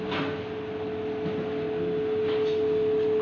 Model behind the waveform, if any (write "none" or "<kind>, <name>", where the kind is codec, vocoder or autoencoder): none